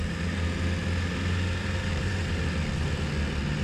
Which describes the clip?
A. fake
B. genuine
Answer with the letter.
B